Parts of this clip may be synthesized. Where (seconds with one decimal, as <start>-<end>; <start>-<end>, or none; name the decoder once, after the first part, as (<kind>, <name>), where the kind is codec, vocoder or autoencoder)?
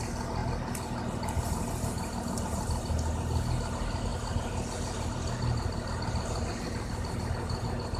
none